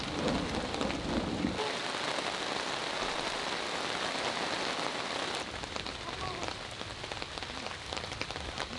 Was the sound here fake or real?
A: real